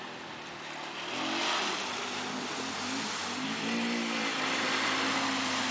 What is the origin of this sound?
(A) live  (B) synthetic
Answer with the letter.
A